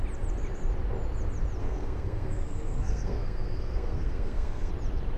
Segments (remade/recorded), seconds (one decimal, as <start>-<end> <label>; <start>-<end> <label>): 0.0-1.6 recorded; 1.6-4.7 remade; 4.7-5.2 recorded